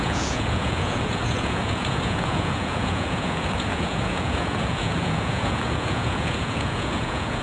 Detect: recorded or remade remade